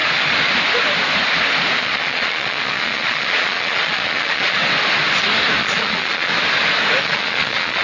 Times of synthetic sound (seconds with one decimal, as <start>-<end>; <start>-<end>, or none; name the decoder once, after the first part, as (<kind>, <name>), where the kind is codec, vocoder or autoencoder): 1.8-4.6 (vocoder, Vocos); 5.6-6.3; 7.0-7.8